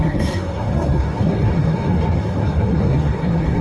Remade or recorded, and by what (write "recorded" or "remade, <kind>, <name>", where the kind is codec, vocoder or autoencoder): remade, codec, SNAC